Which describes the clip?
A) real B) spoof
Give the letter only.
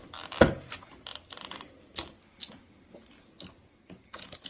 A